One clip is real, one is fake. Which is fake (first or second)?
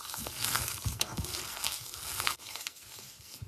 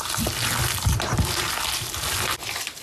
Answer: first